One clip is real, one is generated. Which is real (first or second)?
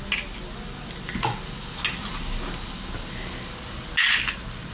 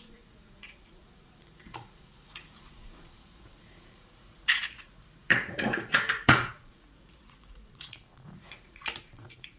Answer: first